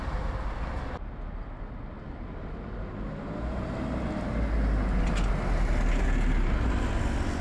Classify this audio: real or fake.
real